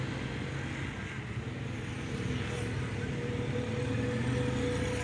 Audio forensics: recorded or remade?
recorded